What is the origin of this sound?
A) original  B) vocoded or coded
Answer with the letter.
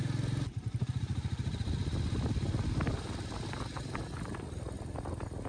A